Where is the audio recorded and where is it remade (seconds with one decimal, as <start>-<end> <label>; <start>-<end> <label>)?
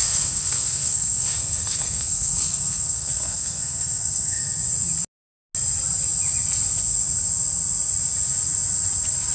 0.0-4.6 remade; 4.6-9.3 recorded